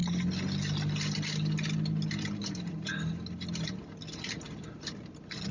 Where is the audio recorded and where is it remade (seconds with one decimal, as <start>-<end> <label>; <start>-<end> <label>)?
0.0-5.5 recorded

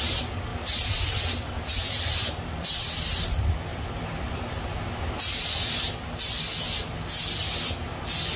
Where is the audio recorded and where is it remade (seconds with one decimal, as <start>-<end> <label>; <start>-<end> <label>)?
0.0-0.5 recorded; 0.5-1.8 remade; 1.8-2.2 recorded; 2.2-3.2 remade; 3.2-3.7 recorded; 3.7-5.4 remade; 5.4-8.4 recorded

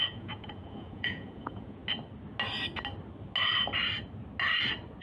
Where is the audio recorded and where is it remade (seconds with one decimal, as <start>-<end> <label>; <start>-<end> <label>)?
0.0-1.8 remade; 1.8-5.0 recorded